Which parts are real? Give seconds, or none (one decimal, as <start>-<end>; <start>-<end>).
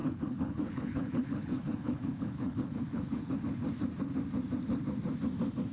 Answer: 3.4-5.7